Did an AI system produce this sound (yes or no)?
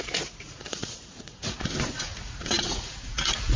yes